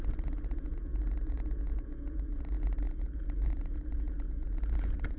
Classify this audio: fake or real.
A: fake